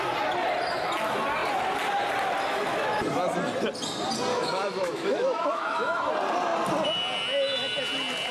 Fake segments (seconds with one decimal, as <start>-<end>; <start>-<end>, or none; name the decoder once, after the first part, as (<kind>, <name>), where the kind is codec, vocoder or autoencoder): 4.3-6.1 (autoencoder, DAC-VAE)